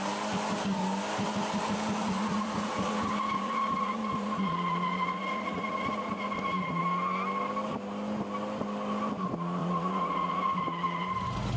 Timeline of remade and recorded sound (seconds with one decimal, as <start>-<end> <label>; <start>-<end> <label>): 0.0-2.0 recorded; 2.0-6.8 remade; 6.8-9.6 recorded; 9.6-11.0 remade; 11.0-11.6 recorded